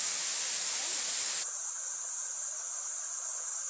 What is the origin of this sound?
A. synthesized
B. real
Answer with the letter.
B